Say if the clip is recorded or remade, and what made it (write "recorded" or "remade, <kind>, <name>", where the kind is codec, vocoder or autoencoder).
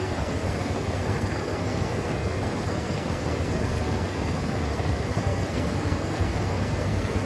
remade, codec, SNAC